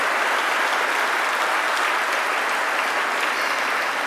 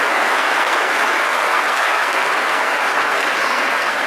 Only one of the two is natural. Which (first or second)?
first